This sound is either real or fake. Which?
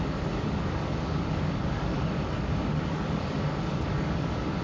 fake